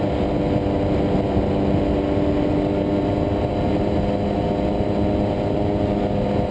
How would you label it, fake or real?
real